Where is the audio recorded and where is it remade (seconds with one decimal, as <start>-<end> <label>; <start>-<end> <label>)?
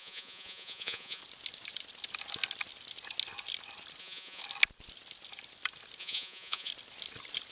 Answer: 0.0-1.2 remade; 1.2-4.0 recorded; 4.0-4.4 remade; 4.4-6.0 recorded; 6.0-6.7 remade; 6.7-7.5 recorded